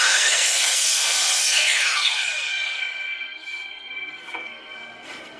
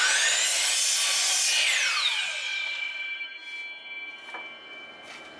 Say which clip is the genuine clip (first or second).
second